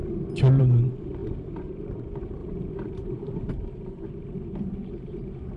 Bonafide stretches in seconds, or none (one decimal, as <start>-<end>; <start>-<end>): 0.0-0.6

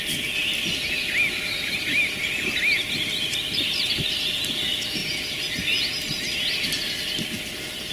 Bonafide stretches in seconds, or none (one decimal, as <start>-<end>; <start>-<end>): 0.0-7.9

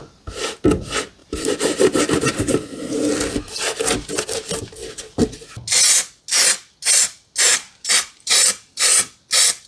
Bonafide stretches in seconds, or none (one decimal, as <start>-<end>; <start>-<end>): 0.0-1.2; 2.5-7.5; 8.7-9.7

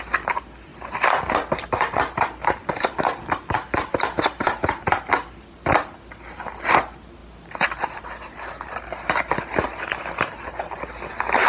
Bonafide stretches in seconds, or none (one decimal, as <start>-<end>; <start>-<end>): 0.0-0.7; 4.8-11.5

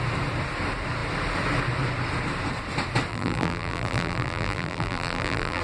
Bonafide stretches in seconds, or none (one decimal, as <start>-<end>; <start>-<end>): 0.0-3.1

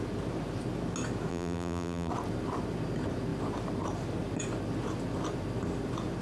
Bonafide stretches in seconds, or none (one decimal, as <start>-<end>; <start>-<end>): 0.0-1.3; 2.1-6.2

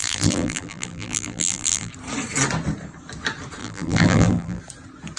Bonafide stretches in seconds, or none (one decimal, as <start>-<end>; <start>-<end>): 1.9-3.6; 4.6-5.2

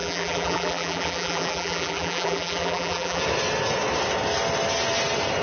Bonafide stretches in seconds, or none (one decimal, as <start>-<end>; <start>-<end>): 3.2-5.4